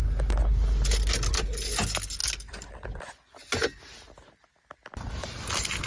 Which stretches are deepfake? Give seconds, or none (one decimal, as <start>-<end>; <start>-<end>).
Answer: none